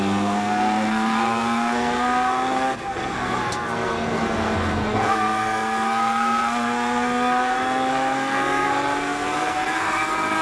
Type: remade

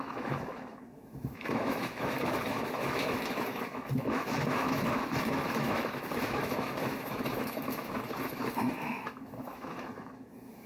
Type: remade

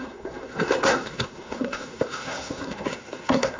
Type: remade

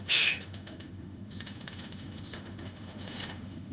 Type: remade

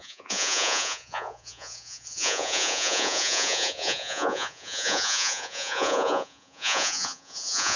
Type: remade